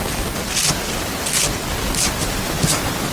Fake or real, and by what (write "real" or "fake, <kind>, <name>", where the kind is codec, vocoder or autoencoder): real